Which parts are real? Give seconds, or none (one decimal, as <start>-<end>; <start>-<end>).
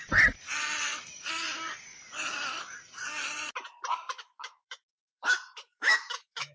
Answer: 0.0-3.9